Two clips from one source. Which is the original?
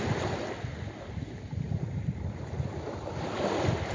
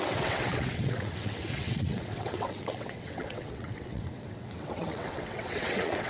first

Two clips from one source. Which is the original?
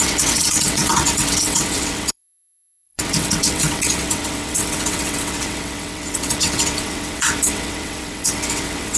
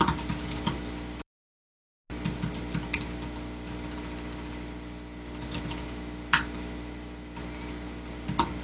second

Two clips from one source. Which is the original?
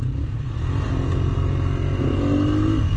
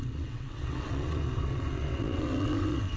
first